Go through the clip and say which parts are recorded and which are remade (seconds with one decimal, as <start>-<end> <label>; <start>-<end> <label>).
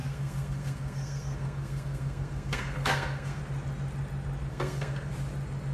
0.0-3.4 remade; 3.4-4.5 recorded; 4.5-5.1 remade; 5.1-5.7 recorded